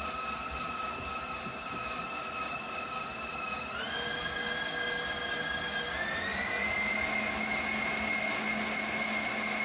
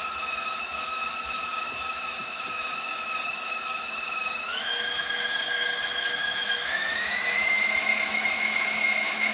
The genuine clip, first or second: first